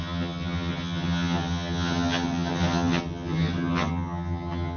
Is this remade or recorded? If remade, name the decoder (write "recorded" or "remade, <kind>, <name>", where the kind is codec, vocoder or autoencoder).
remade, vocoder, HiFi-GAN